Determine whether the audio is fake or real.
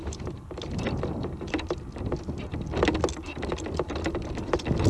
real